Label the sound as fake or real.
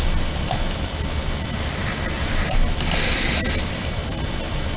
real